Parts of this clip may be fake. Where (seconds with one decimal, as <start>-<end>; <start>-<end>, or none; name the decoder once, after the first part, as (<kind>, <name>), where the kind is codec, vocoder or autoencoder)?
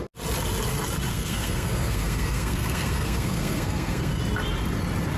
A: 1.1-4.2 (codec, SNAC)